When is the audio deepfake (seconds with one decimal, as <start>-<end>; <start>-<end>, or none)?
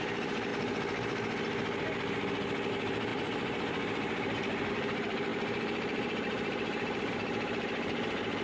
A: 0.0-0.5; 2.7-8.4